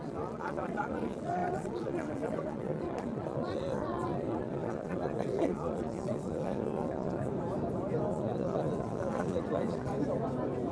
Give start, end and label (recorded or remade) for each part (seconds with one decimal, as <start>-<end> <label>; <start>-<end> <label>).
0.0-7.3 remade; 7.3-8.1 recorded; 8.1-9.9 remade; 9.9-10.7 recorded